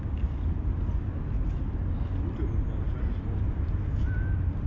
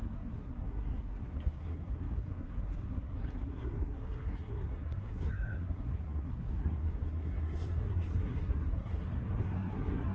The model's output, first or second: second